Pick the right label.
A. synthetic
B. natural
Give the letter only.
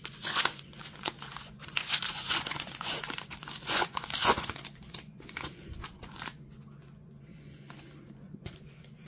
A